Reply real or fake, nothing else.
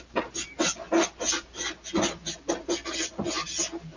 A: real